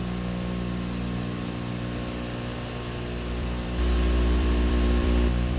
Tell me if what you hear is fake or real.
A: fake